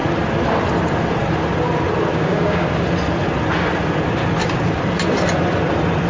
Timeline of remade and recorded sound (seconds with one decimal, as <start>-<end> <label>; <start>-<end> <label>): 0.0-2.1 recorded; 2.1-2.7 remade; 2.7-6.1 recorded